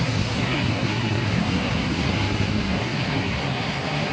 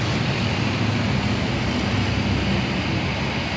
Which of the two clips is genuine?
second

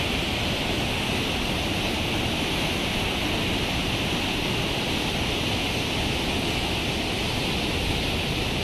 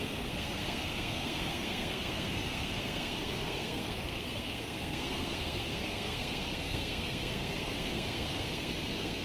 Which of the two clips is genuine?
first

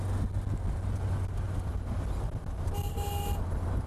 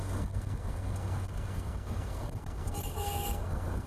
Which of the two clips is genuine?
first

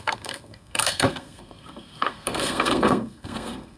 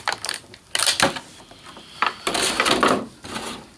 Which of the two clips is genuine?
second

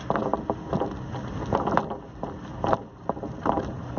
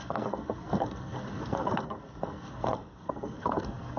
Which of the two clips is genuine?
first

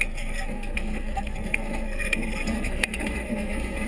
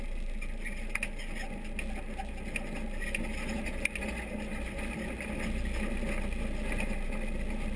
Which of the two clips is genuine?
second